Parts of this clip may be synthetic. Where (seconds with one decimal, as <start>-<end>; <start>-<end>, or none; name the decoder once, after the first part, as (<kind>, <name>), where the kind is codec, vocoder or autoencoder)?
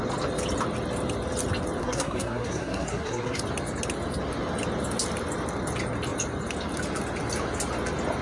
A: 1.8-3.4 (codec, SNAC)